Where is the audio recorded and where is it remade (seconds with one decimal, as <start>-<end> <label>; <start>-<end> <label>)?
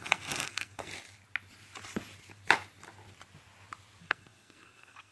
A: 0.0-0.9 remade; 0.9-4.0 recorded; 4.0-5.1 remade